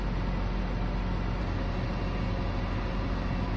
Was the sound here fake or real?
real